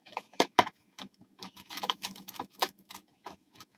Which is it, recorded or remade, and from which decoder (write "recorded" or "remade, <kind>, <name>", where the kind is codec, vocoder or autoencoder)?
remade, autoencoder, DAC-VAE